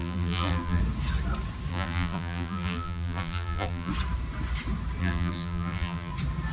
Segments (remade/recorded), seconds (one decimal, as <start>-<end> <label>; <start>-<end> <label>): 0.0-0.8 remade; 0.8-1.7 recorded; 1.7-3.9 remade; 3.9-5.0 recorded; 5.0-6.1 remade; 6.1-6.5 recorded